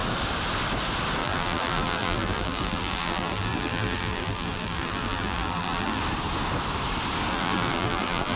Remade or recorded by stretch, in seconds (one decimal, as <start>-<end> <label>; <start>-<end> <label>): 0.0-1.2 recorded; 1.2-6.0 remade; 6.0-7.3 recorded; 7.3-8.4 remade